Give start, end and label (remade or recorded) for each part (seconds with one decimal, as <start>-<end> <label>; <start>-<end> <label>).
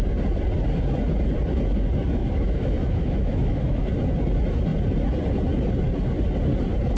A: 0.0-2.2 recorded; 2.2-3.9 remade; 3.9-7.0 recorded